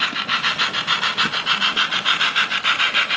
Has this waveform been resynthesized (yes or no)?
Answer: no